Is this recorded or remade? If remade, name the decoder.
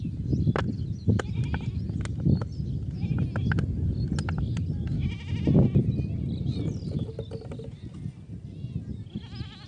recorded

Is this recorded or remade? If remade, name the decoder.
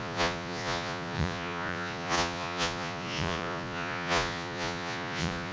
remade, vocoder, Vocos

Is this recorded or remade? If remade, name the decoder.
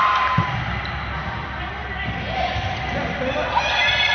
recorded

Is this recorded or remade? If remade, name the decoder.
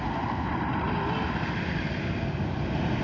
recorded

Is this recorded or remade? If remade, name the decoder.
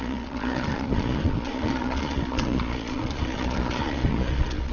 remade, vocoder, Vocos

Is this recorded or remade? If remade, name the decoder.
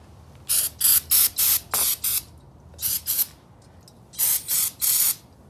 recorded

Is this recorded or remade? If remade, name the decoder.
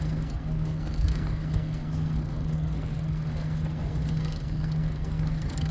remade, codec, SNAC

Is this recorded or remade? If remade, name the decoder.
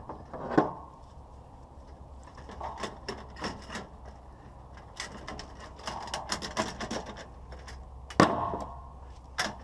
recorded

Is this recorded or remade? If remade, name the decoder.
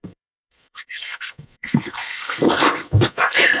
remade, codec, SNAC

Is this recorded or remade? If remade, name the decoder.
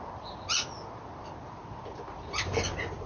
recorded